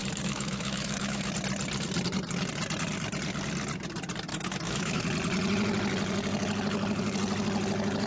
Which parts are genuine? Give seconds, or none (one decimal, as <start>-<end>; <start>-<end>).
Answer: 1.3-4.3; 5.0-8.1